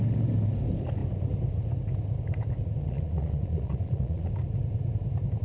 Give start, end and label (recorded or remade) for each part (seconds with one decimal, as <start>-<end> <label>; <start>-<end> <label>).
0.0-2.8 recorded; 2.8-4.3 remade; 4.3-5.4 recorded